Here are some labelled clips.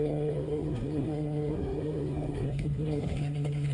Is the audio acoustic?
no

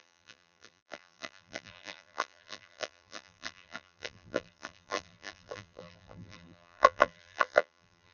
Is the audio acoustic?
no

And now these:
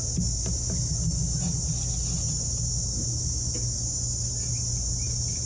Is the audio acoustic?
yes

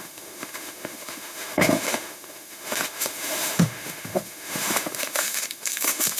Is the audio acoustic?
no